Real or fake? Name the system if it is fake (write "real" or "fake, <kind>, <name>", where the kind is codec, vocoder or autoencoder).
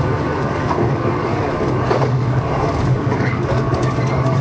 fake, codec, DAC